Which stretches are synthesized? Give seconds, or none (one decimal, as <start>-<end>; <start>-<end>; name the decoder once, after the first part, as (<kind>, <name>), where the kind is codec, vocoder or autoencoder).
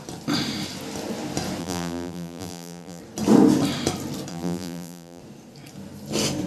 1.6-3.0 (vocoder, BigVGAN v2); 4.3-5.2